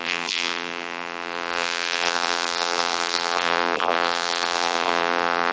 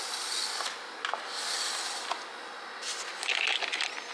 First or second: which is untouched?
second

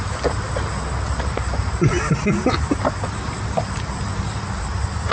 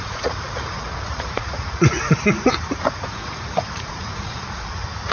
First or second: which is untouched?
first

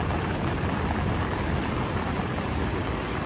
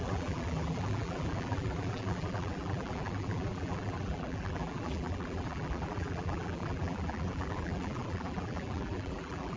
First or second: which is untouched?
first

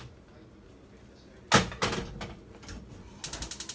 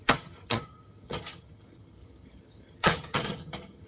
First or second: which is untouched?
first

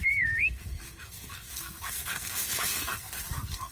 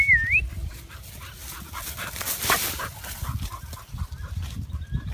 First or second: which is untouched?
second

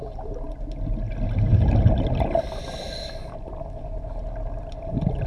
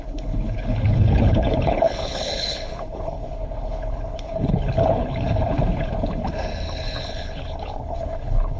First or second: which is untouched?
first